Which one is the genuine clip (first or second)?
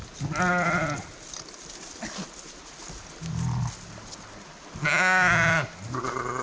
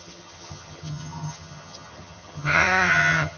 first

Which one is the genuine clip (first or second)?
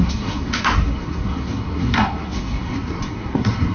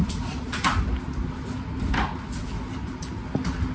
second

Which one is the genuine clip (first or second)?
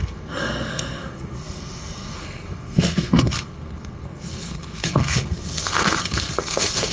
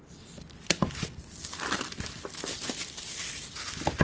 second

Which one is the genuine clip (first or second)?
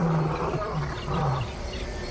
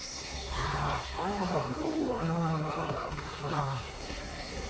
first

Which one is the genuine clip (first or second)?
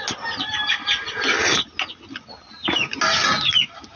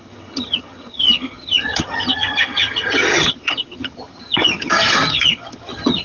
first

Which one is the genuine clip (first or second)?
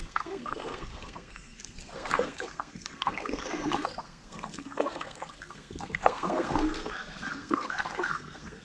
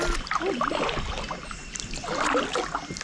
second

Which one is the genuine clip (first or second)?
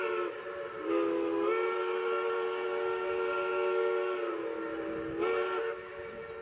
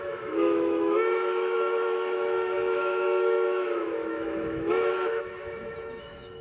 first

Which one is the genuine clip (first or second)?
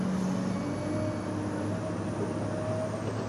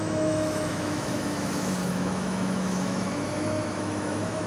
first